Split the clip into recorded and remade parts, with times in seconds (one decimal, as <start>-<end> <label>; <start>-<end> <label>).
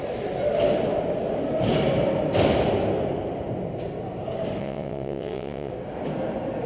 0.0-4.6 recorded; 4.6-5.7 remade; 5.7-6.7 recorded